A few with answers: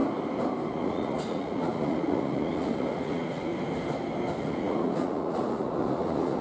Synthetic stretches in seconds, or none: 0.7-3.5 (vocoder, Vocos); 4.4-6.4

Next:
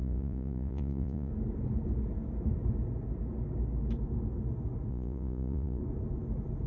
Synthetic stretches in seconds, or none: 0.0-1.3 (vocoder, Vocos); 4.9-5.8

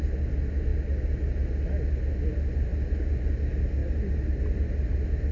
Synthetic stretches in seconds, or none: none

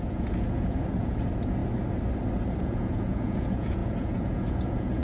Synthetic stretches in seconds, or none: 0.0-1.6 (vocoder, Vocos); 2.5-5.0

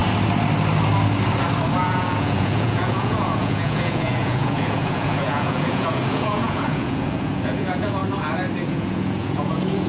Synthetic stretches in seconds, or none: 1.8-8.0 (vocoder, Vocos); 8.6-9.9